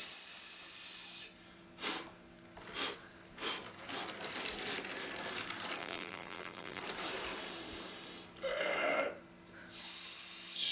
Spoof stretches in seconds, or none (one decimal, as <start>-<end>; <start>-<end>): 5.8-6.8